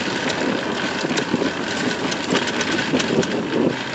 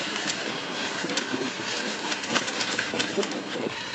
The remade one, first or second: second